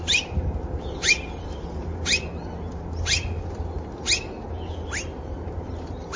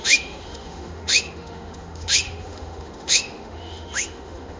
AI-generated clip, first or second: second